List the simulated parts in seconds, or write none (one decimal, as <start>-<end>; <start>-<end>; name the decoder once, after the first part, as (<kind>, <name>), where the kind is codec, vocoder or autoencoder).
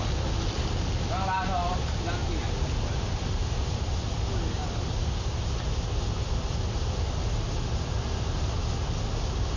none